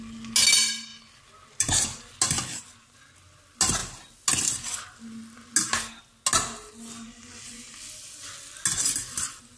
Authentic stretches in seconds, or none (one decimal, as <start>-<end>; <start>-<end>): 0.0-9.6